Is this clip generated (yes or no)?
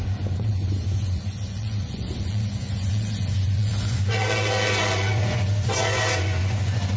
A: yes